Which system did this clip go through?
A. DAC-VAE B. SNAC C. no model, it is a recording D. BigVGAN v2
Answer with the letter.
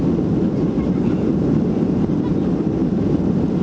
C